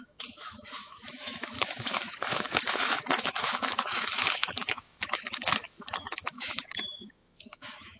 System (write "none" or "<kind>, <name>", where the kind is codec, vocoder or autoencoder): autoencoder, DAC-VAE